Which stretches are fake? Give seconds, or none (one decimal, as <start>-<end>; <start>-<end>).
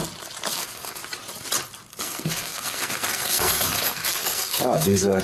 0.5-1.0; 1.9-5.2